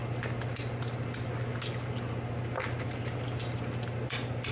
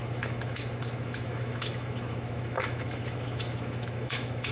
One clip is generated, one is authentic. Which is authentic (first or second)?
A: first